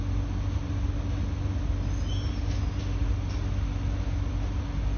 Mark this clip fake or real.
real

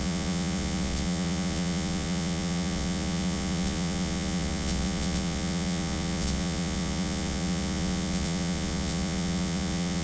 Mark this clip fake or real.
fake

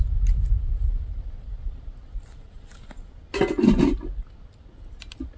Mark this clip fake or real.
real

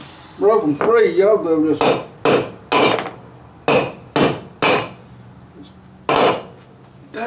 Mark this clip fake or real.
real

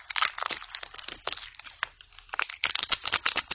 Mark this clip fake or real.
real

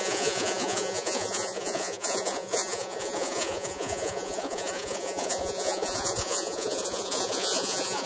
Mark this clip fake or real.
fake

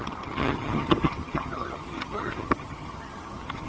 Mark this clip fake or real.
fake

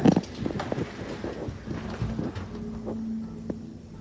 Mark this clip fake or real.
real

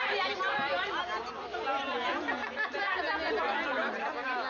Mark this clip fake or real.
real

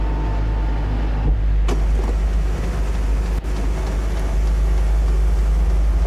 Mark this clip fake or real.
real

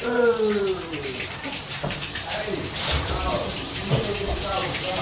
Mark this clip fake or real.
fake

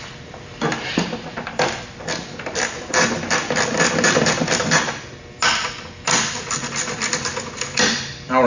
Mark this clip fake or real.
fake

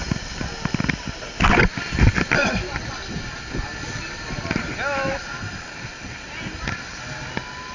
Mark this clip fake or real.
real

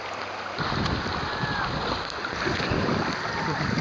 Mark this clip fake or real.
real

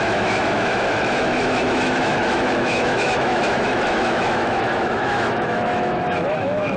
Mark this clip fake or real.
fake